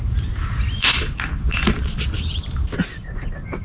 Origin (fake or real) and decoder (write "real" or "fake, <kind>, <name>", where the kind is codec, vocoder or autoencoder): real